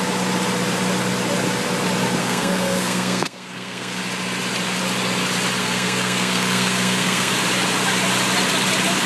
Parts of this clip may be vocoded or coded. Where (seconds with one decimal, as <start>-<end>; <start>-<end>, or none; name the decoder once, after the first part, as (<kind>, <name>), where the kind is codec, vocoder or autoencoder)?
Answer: 2.2-4.0 (codec, SNAC); 5.6-7.3